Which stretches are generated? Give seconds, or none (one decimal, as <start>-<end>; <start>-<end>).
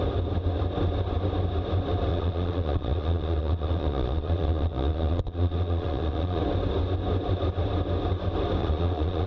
2.1-6.4; 8.6-9.3